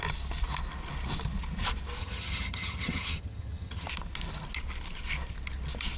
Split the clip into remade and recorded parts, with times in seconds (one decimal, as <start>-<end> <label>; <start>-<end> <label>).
0.0-2.0 recorded; 2.0-3.9 remade; 3.9-6.0 recorded